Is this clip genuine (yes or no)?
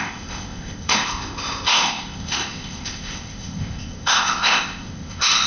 no